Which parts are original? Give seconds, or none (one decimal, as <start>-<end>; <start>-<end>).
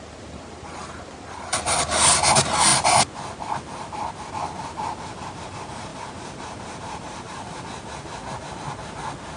0.0-5.9; 7.6-9.4